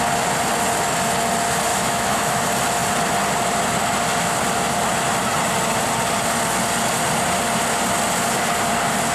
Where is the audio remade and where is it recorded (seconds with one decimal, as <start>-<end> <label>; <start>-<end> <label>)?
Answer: 0.0-1.7 recorded; 1.7-2.4 remade; 2.4-9.1 recorded